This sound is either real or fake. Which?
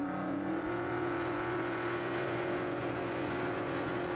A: fake